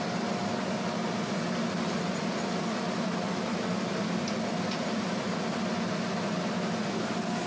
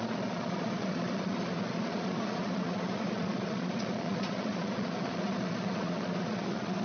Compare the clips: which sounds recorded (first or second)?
first